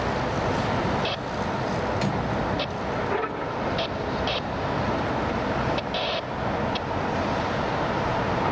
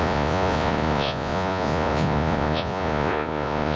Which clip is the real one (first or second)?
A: first